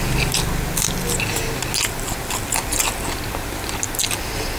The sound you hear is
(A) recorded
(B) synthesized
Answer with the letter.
A